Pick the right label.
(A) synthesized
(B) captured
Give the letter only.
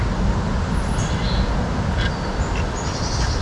B